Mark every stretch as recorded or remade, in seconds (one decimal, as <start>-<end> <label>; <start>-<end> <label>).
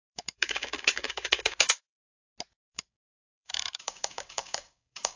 0.0-2.0 remade; 2.0-2.7 recorded; 2.7-5.2 remade